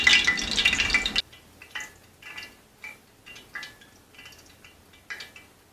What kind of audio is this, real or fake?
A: real